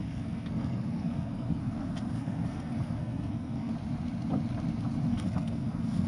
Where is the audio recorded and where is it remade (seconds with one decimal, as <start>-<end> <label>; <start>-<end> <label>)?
0.0-3.7 remade; 3.7-5.1 recorded; 5.1-6.1 remade